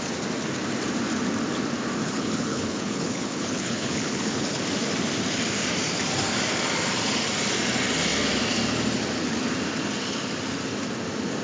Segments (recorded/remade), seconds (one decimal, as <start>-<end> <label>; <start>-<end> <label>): 0.0-2.0 recorded; 2.0-4.6 remade; 4.6-11.4 recorded